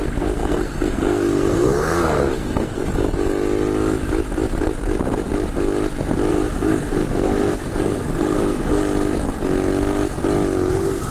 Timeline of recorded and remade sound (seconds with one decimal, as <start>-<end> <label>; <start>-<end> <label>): 0.0-2.8 remade; 2.8-6.3 recorded; 6.3-8.8 remade; 8.8-10.7 recorded; 10.7-11.1 remade